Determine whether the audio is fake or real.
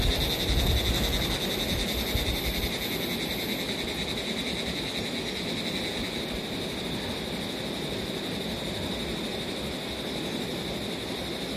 real